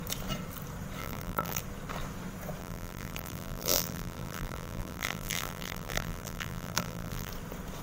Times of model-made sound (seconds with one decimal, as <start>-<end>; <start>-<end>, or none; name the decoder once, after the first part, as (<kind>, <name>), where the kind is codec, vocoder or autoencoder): 1.0-1.6 (vocoder, BigVGAN v2); 2.6-7.3